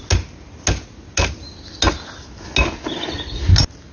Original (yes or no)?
yes